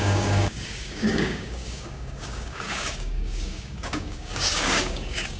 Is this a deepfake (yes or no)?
yes